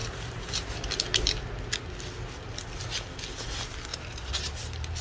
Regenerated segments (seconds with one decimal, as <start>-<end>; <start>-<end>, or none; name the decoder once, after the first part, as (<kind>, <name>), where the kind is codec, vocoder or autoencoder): 0.0-0.9 (vocoder, BigVGAN v2); 3.9-5.0